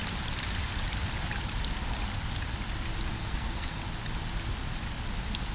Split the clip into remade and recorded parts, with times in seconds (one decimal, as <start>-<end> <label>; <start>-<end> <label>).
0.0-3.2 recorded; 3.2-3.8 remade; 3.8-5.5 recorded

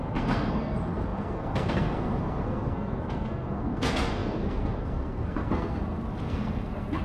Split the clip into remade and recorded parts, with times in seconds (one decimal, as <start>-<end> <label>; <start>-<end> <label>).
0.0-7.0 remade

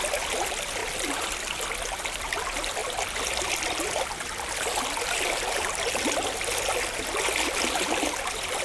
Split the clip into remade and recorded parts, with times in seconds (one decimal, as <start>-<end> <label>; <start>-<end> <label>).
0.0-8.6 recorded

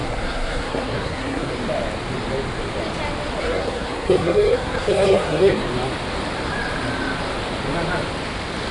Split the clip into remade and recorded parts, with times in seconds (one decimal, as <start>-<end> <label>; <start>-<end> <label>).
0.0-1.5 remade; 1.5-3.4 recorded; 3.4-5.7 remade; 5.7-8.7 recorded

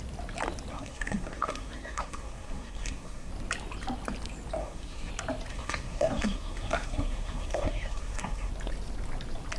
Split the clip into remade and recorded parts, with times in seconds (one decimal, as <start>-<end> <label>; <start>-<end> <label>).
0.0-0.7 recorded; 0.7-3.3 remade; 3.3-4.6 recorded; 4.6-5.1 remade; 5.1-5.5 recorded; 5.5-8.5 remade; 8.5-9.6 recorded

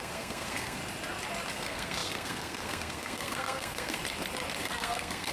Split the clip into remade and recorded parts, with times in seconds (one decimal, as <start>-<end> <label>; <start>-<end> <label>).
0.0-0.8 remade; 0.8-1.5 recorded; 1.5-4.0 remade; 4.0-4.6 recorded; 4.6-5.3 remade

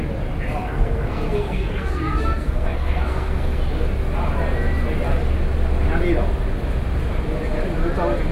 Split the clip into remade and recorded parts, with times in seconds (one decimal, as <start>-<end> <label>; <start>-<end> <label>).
0.0-0.6 recorded; 0.6-3.6 remade; 3.6-8.3 recorded